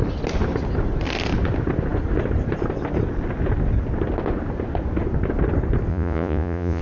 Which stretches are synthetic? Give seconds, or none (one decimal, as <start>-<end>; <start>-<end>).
5.9-6.8